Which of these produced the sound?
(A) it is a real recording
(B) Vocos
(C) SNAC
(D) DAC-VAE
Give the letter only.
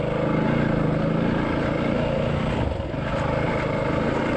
A